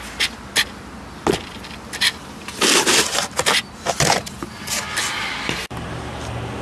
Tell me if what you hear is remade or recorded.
recorded